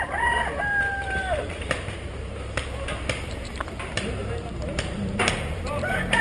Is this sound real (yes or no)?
no